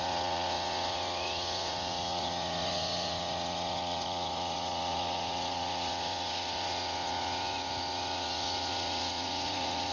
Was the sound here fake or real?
fake